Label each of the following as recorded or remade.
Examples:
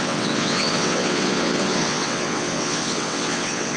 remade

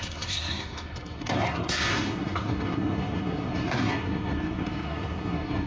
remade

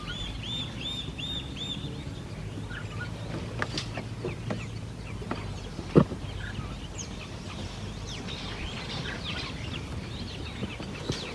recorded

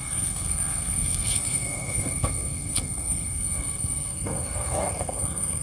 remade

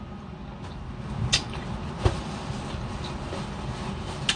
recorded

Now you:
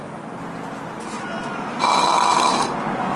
recorded